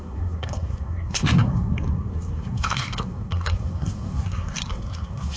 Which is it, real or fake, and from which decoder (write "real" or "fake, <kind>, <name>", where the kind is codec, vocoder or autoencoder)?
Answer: fake, codec, SNAC